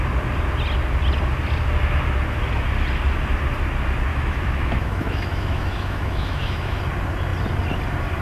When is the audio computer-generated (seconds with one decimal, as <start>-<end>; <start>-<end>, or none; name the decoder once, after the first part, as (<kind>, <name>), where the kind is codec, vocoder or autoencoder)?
4.1-6.8 (autoencoder, DAC-VAE)